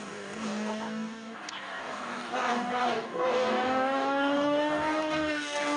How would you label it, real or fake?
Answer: fake